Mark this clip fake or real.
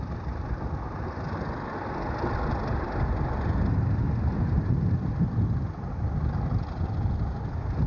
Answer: real